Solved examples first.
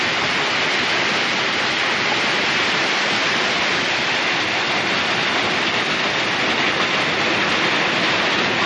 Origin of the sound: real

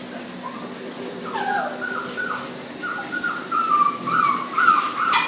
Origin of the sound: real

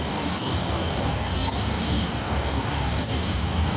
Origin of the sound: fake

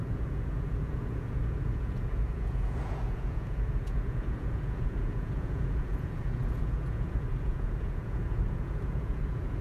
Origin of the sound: fake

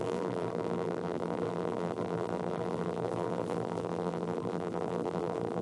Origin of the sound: fake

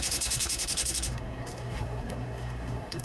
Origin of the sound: fake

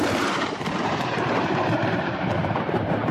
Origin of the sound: fake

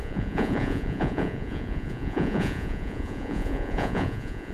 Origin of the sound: fake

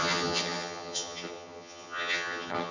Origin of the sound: fake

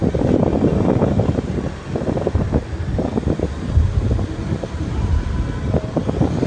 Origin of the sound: real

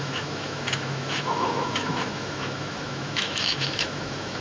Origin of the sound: fake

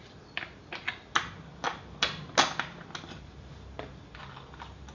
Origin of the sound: real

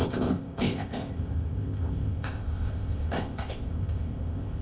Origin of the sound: fake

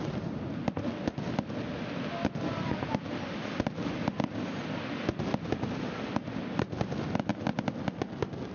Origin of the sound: real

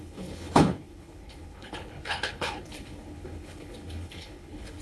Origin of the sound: fake